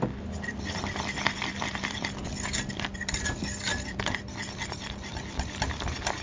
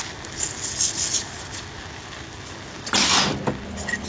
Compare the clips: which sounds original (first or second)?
second